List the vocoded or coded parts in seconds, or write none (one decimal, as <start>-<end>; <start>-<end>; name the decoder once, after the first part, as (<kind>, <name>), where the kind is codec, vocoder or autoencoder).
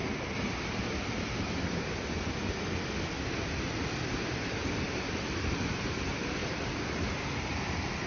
none